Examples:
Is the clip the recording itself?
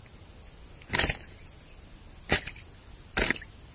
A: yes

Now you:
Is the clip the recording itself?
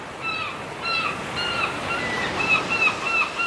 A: yes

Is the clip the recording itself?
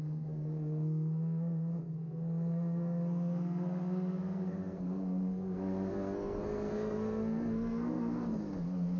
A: no